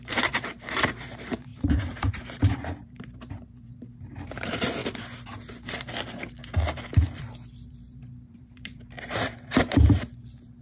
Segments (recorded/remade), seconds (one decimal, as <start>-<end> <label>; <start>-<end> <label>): 0.0-4.8 remade; 4.8-5.7 recorded; 5.7-6.4 remade; 6.4-7.7 recorded; 7.7-10.6 remade